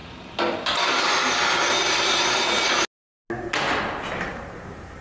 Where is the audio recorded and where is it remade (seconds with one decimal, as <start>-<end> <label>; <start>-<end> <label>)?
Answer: 0.0-1.8 recorded; 1.8-2.4 remade; 2.4-5.0 recorded